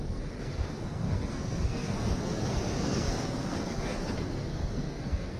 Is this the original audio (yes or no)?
no